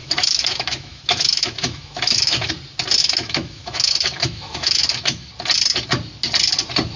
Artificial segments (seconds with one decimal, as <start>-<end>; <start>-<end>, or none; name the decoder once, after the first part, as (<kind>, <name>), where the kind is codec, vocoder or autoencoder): 0.0-2.5 (autoencoder, DAC-VAE); 3.0-5.3